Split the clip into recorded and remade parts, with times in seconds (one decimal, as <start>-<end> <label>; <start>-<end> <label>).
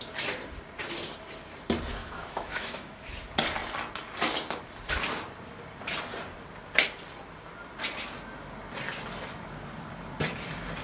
0.0-2.0 recorded; 2.0-3.1 remade; 3.1-10.8 recorded